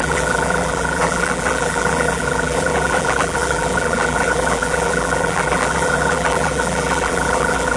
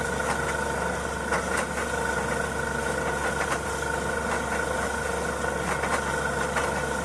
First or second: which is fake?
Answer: first